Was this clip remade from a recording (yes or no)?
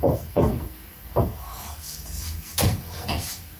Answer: yes